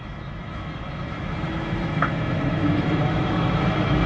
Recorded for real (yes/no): no